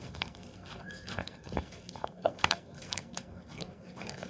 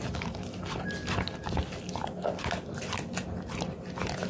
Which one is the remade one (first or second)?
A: first